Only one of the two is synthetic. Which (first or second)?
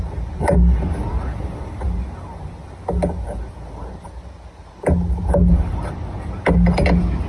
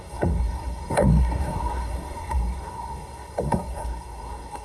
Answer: second